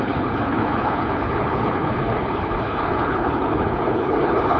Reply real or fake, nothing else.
fake